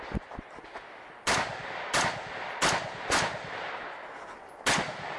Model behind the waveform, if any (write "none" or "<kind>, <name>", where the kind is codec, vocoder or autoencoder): none